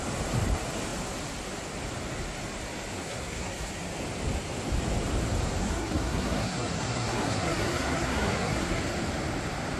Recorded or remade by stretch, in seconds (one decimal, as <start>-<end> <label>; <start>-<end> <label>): 0.0-3.0 recorded; 3.0-3.7 remade; 3.7-5.6 recorded; 5.6-8.8 remade; 8.8-9.8 recorded